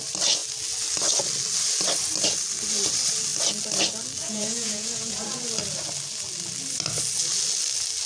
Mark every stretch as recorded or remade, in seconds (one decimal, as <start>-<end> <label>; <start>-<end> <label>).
0.0-4.2 recorded; 4.2-5.4 remade; 5.4-8.1 recorded